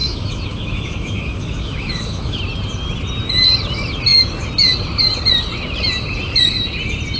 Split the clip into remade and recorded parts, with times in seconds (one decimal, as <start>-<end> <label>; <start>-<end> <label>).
0.0-2.4 remade; 2.4-7.2 recorded